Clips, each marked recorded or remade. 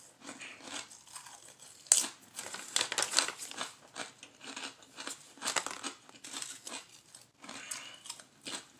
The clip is recorded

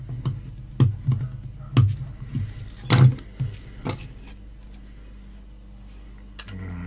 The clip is recorded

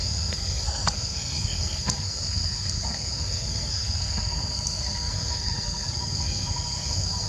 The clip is remade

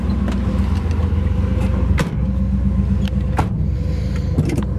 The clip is recorded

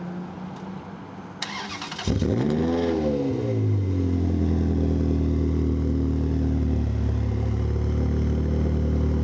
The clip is recorded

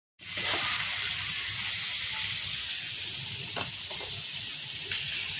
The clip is recorded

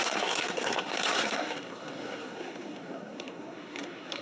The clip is remade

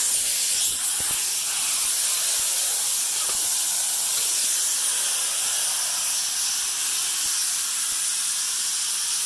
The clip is recorded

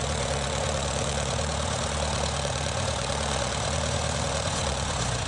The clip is remade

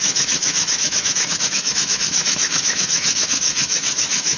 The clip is remade